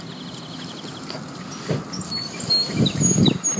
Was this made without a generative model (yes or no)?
yes